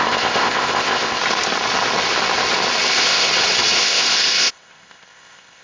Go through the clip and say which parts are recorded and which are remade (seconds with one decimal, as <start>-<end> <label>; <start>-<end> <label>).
0.0-1.2 remade; 1.2-2.9 recorded; 2.9-3.3 remade; 3.3-3.8 recorded; 3.8-5.6 remade